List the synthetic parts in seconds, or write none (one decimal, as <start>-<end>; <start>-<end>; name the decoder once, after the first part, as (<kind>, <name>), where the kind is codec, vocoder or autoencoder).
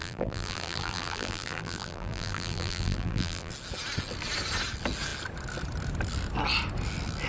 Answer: 0.0-3.5 (vocoder, BigVGAN v2)